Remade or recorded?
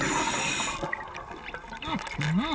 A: recorded